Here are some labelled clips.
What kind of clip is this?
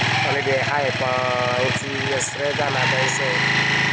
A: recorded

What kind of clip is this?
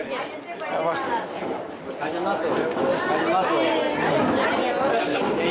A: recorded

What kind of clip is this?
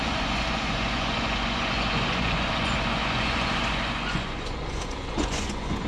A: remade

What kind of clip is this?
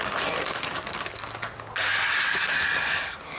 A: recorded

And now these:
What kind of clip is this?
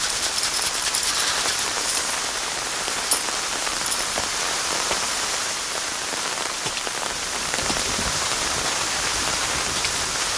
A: remade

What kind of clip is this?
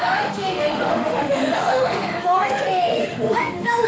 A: remade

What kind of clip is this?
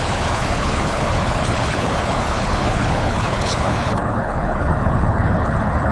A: remade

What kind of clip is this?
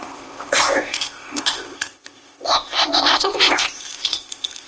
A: remade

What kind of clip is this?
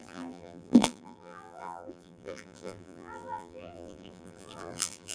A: remade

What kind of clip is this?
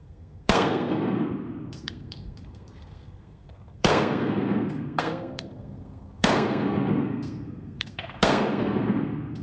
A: remade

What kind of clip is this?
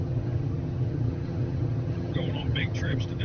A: remade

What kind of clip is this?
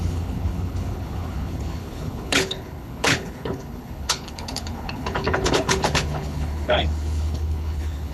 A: remade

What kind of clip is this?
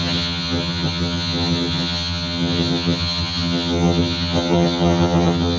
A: remade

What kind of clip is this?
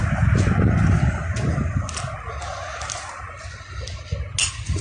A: recorded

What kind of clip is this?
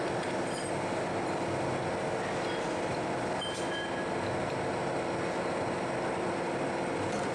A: recorded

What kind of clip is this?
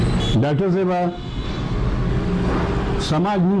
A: recorded